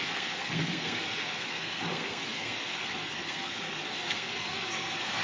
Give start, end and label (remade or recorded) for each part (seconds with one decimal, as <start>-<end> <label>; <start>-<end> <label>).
0.0-5.2 remade